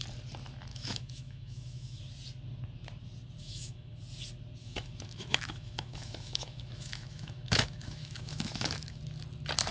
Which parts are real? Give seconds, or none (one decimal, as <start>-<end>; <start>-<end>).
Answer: 0.0-0.7; 2.0-3.4; 3.9-4.6; 9.0-9.7